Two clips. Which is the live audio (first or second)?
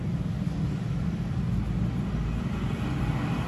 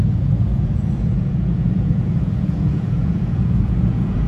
first